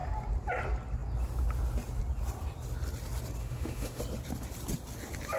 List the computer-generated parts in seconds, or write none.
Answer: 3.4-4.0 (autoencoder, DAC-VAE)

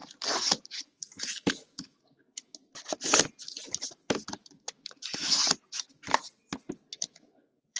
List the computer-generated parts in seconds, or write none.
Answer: 0.9-2.6 (autoencoder, DAC-VAE); 4.5-5.4; 6.9-7.8

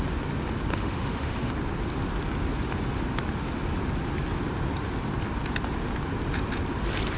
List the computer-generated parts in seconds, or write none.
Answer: 0.7-1.5 (autoencoder, DAC-VAE)